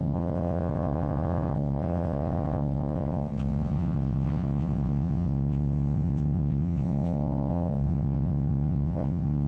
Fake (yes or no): yes